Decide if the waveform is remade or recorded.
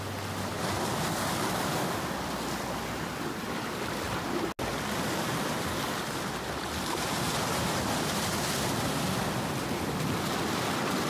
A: recorded